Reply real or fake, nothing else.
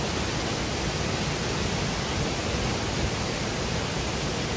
real